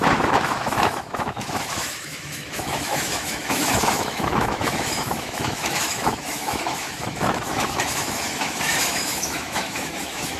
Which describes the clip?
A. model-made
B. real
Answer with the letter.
A